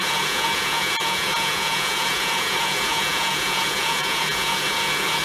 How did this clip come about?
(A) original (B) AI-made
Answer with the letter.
B